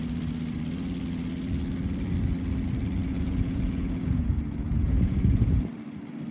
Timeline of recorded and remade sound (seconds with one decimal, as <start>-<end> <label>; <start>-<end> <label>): 0.0-3.1 recorded; 3.1-5.7 remade; 5.7-6.3 recorded